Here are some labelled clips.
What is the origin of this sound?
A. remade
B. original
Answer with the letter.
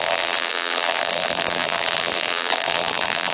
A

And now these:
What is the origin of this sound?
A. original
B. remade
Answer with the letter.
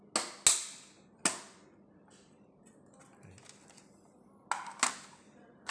A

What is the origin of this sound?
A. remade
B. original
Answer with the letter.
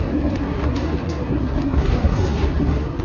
A